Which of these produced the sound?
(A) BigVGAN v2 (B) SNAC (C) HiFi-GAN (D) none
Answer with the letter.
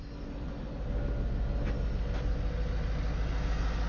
D